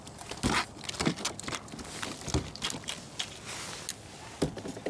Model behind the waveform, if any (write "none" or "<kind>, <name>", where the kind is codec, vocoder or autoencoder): none